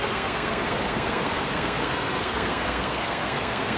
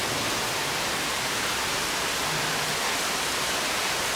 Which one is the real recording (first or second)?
second